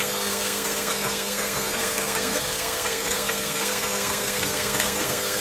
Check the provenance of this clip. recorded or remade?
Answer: remade